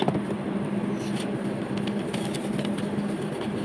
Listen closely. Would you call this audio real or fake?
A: real